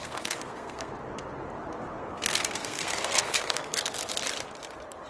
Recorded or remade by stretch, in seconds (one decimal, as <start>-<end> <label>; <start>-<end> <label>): 0.0-0.9 remade; 0.9-2.0 recorded; 2.0-3.8 remade; 3.8-5.1 recorded